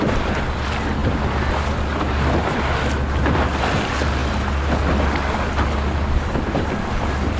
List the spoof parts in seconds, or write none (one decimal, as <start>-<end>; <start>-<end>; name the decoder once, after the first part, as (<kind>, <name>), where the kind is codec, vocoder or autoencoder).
none